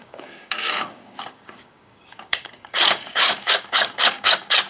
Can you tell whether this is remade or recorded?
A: remade